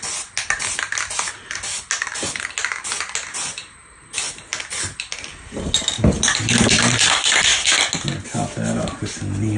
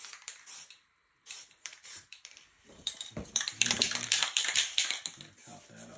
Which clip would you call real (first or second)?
first